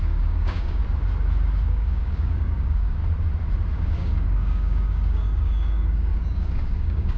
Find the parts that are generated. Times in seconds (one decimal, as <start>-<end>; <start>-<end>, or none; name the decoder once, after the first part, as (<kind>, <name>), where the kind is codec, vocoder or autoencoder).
0.0-0.8 (codec, DAC); 1.7-3.0; 3.7-7.2